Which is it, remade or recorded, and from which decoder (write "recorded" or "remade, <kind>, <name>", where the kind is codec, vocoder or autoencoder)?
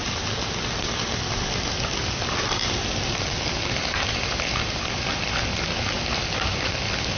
recorded